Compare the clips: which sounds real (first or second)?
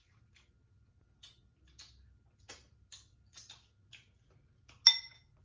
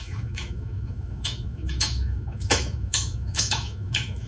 first